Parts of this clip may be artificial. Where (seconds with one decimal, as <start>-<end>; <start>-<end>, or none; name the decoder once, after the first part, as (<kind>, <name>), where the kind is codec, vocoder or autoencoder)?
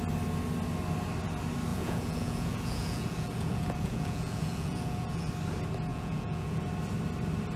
1.7-5.3 (vocoder, Vocos); 5.9-6.6